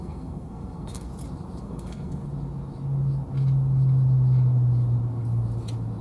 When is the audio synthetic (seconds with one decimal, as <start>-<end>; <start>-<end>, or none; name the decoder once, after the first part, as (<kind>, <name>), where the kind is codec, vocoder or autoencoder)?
0.0-1.1 (codec, SNAC); 1.6-2.2